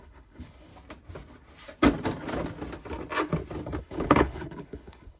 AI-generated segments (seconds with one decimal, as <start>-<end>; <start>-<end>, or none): 0.0-0.7; 3.8-5.2